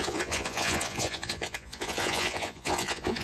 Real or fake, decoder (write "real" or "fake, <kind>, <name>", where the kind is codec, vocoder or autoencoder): fake, vocoder, Vocos